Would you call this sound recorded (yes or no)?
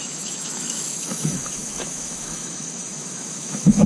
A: no